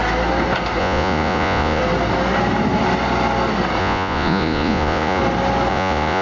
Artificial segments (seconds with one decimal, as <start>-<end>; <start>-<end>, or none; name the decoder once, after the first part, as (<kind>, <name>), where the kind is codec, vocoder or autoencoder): 0.8-1.8 (vocoder, Vocos); 3.8-5.2; 5.7-6.2